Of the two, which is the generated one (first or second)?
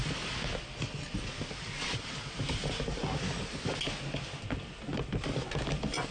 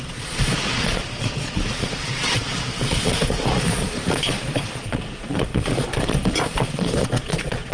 second